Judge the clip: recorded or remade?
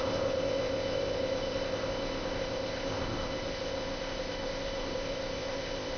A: remade